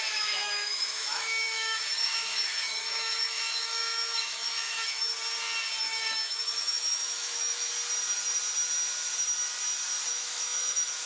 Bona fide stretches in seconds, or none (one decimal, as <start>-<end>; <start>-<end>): 5.1-5.8; 7.7-10.1